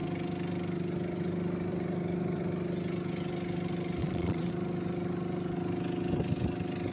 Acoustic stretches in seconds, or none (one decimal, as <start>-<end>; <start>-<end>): 0.0-4.0; 4.5-6.9